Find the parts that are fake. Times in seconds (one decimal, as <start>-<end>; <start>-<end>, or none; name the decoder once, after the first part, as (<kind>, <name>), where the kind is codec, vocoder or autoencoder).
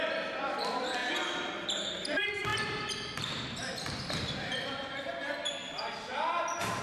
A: 0.0-1.0 (vocoder, BigVGAN v2); 2.0-5.6